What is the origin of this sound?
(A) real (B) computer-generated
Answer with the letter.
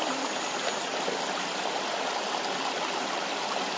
A